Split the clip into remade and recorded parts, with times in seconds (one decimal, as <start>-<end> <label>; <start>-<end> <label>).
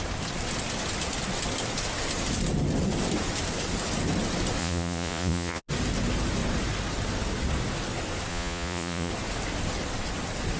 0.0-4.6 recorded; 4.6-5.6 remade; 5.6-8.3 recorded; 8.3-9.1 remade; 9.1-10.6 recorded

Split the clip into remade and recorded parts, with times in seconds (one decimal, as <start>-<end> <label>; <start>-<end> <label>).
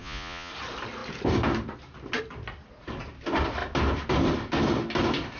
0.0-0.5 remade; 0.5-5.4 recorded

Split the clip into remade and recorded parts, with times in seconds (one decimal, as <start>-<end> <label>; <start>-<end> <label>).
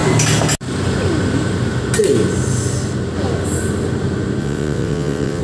0.0-4.4 recorded; 4.4-5.4 remade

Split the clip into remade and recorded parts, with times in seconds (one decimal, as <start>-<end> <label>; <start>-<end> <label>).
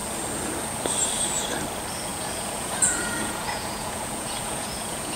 0.0-2.1 recorded; 2.1-5.2 remade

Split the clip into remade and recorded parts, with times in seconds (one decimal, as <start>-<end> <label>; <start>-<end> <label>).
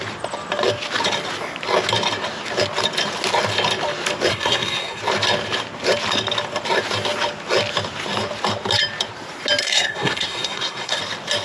0.0-4.3 recorded; 4.3-5.0 remade; 5.0-9.6 recorded; 9.6-11.0 remade; 11.0-11.4 recorded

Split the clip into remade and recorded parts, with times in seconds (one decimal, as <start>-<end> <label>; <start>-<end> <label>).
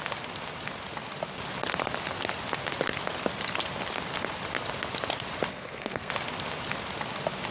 0.0-5.5 recorded; 5.5-6.1 remade; 6.1-7.5 recorded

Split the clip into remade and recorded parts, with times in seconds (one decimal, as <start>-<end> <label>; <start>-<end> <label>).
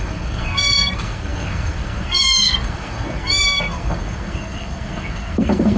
0.0-5.8 remade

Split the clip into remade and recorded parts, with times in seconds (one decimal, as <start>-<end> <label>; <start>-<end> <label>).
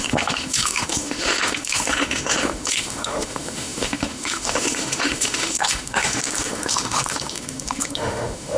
0.0-8.6 remade